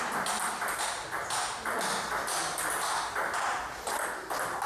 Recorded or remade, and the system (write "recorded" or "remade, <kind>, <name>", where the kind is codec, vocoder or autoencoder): recorded